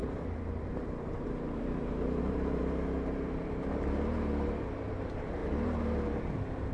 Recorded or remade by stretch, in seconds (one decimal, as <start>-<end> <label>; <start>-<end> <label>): 0.0-2.6 remade; 2.6-4.9 recorded; 4.9-5.4 remade; 5.4-6.7 recorded